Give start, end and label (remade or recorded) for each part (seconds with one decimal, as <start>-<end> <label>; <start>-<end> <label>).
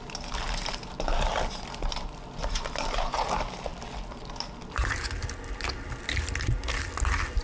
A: 0.0-7.4 recorded